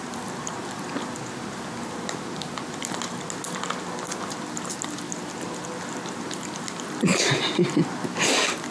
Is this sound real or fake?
real